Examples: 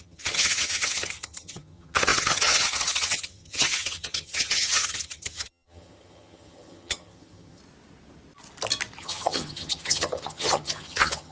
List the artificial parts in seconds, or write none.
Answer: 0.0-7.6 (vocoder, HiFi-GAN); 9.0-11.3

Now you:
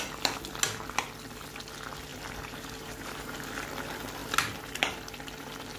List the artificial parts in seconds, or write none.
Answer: 2.1-3.4 (vocoder, BigVGAN v2)

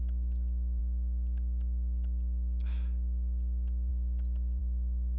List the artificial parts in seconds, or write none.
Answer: 0.8-3.9 (autoencoder, DAC-VAE); 4.6-5.2

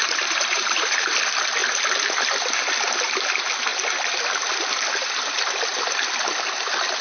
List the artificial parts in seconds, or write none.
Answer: 0.0-1.1 (vocoder, BigVGAN v2)

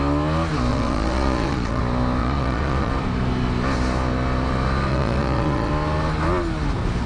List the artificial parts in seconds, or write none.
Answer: 0.7-1.8 (vocoder, Vocos); 2.2-2.9; 4.9-5.7

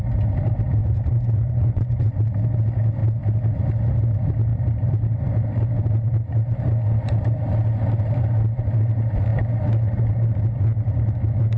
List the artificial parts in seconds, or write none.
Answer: 0.8-2.1 (vocoder, Vocos)